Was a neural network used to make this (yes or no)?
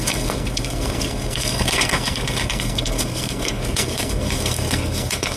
yes